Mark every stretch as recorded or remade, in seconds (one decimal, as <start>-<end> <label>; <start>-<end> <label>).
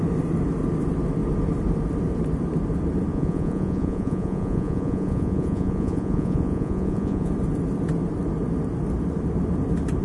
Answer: 0.0-3.1 recorded; 3.1-7.3 remade; 7.3-10.0 recorded